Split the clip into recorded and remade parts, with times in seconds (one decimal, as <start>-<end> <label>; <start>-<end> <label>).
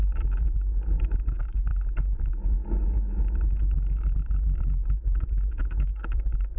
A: 0.0-6.6 remade